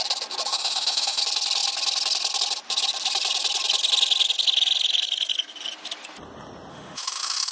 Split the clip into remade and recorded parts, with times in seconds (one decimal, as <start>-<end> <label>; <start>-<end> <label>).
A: 0.0-0.5 recorded; 0.5-1.2 remade; 1.2-6.7 recorded; 6.7-7.5 remade